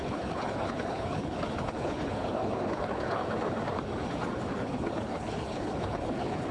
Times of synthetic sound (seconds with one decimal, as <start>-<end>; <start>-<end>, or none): 0.0-3.2; 4.5-6.5